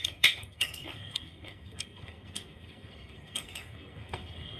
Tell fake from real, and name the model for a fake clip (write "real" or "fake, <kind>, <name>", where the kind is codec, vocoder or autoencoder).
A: fake, codec, SNAC